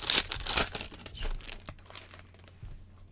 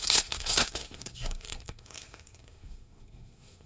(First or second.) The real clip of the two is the first